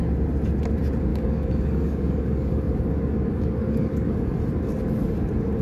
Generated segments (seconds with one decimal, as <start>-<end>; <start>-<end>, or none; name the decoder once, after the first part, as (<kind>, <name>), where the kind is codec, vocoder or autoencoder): 1.1-4.4 (codec, DAC)